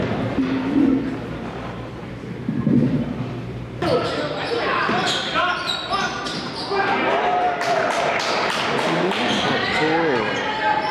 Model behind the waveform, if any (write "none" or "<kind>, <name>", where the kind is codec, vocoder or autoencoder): vocoder, BigVGAN v2